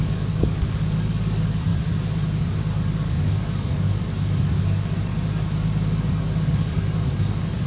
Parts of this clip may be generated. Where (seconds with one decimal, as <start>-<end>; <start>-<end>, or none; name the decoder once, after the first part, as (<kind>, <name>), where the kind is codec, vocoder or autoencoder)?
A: 0.0-1.7 (codec, DAC); 2.4-5.1; 6.1-7.7